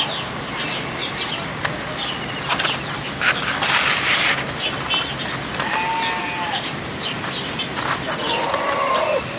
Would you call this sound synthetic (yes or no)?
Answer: no